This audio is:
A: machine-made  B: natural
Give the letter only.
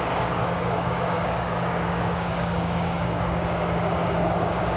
A